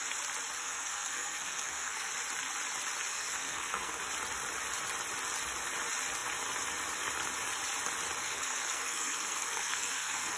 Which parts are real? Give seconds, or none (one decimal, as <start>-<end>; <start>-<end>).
0.0-0.6; 2.1-3.1; 4.0-8.2